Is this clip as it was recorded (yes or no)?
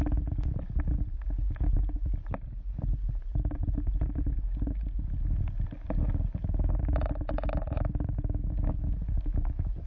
yes